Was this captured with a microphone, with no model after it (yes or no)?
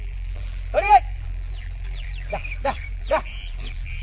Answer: no